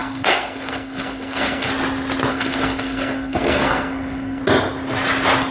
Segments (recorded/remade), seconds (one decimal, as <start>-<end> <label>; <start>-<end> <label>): 0.0-1.7 remade; 1.7-2.3 recorded; 2.3-4.4 remade; 4.4-5.5 recorded